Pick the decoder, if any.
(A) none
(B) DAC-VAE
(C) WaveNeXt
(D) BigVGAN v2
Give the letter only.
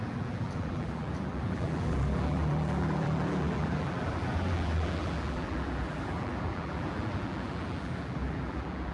D